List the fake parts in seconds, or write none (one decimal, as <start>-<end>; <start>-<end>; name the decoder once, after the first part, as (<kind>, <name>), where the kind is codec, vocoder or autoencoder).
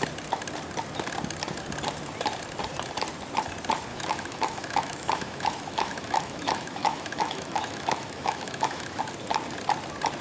3.9-9.0 (autoencoder, DAC-VAE)